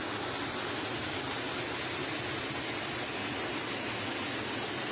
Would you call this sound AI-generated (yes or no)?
no